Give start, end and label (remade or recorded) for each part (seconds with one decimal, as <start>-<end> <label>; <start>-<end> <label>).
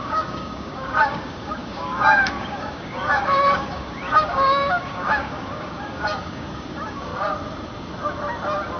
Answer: 0.0-7.1 remade; 7.1-8.8 recorded